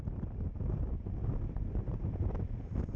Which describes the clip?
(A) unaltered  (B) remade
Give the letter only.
B